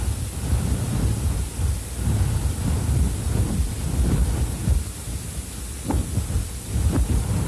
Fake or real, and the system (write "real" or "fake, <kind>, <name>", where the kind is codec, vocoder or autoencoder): real